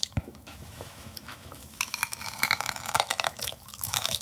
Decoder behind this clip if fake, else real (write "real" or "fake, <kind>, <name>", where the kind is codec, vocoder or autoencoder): fake, autoencoder, DAC-VAE